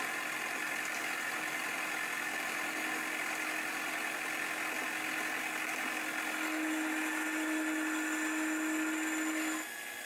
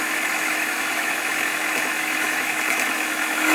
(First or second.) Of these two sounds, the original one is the first